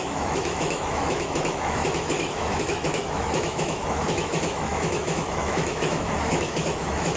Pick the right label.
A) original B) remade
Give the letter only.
B